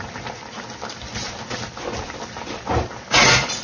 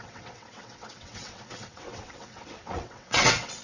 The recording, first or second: first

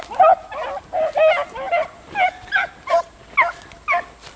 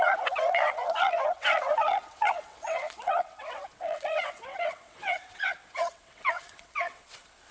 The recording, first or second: first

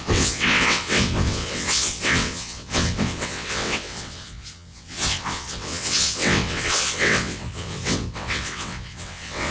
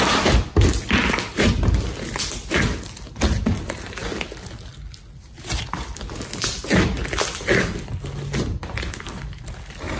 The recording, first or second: second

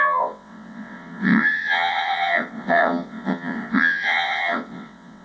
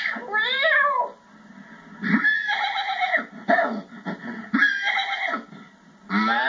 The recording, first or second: second